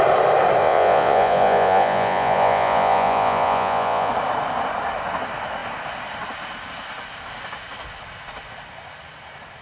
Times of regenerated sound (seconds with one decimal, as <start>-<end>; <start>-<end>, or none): 0.6-4.1